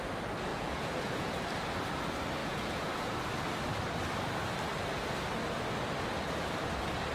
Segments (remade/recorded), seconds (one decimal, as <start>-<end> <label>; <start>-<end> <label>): 0.0-0.5 recorded; 0.5-1.4 remade; 1.4-2.4 recorded; 2.4-3.1 remade; 3.1-7.1 recorded